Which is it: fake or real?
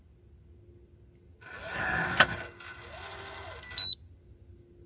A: real